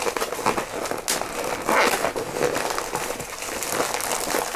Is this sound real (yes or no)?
yes